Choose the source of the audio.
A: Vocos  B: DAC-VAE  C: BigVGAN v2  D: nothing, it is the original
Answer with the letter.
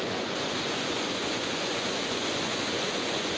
A